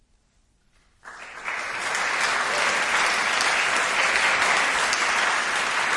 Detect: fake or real real